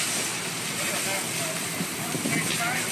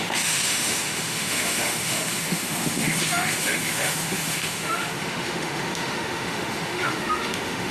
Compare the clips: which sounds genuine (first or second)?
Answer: first